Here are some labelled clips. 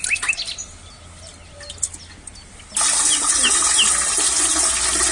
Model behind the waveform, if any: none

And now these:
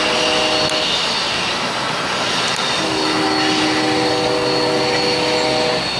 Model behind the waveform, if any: none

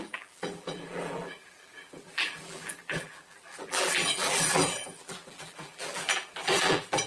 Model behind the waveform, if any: vocoder, BigVGAN v2